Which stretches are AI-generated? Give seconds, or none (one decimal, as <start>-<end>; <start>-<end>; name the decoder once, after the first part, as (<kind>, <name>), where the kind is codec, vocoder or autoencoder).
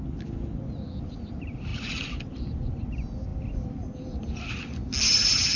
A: none